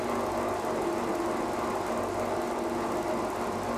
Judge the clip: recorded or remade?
recorded